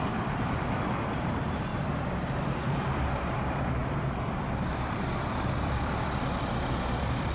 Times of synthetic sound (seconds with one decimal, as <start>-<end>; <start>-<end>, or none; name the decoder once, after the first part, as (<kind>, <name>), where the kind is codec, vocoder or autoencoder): 0.0-7.3 (vocoder, BigVGAN v2)